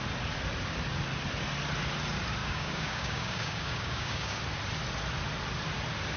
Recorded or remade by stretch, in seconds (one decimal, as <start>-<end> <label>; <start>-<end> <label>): 0.0-2.4 recorded; 2.4-4.4 remade; 4.4-6.2 recorded

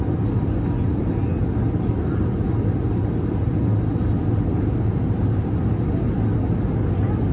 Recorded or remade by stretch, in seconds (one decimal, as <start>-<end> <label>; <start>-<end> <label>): 0.0-7.3 recorded

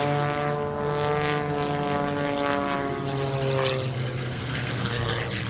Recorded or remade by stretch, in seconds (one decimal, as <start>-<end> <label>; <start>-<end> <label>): 0.0-4.2 recorded; 4.2-5.1 remade; 5.1-5.5 recorded

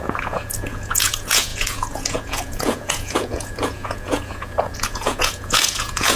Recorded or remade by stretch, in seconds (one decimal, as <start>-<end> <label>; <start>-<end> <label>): 0.0-6.2 remade

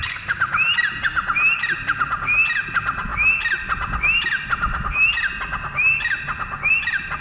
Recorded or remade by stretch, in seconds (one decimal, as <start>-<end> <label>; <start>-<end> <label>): 0.0-7.2 recorded

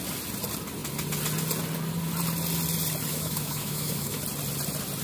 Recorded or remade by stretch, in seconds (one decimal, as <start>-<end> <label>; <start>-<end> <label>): 0.0-3.1 recorded; 3.1-4.2 remade; 4.2-5.0 recorded

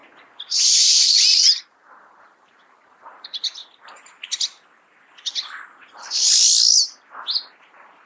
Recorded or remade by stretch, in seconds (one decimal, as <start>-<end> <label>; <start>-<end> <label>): 0.0-0.6 recorded; 0.6-3.6 remade; 3.6-7.6 recorded; 7.6-8.1 remade